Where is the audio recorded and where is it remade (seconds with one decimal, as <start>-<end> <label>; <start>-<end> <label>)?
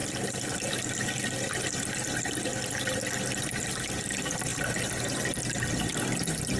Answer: 0.0-6.6 recorded